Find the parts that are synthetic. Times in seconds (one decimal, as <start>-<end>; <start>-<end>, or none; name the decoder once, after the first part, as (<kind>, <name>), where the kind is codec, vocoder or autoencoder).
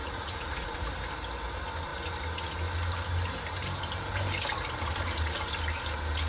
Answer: 0.0-0.8 (vocoder, Vocos)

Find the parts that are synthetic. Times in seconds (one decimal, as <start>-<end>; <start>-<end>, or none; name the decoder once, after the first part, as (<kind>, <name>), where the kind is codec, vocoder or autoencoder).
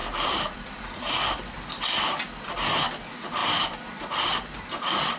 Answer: 0.0-2.5 (vocoder, BigVGAN v2)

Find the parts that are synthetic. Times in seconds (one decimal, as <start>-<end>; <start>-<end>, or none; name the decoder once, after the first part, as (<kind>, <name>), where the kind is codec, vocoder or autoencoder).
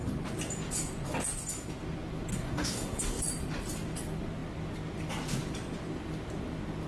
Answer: 2.3-3.2 (codec, SNAC)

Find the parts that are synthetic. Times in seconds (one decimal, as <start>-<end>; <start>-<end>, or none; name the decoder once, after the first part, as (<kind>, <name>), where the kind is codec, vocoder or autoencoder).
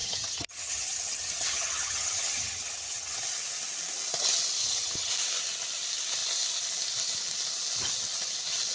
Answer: 0.0-3.2 (vocoder, HiFi-GAN); 4.6-5.1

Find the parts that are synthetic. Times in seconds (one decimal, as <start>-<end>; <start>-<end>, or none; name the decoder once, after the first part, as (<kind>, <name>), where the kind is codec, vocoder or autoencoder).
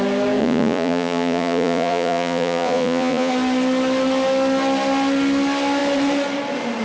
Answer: 0.4-3.3 (vocoder, Vocos)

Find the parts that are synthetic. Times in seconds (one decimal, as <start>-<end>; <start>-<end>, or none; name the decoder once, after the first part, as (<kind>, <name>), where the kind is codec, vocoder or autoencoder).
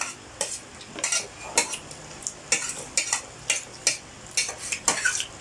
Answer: none